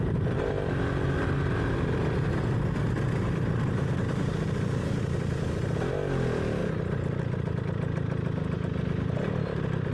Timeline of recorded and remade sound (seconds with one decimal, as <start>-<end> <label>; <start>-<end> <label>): 0.0-9.9 recorded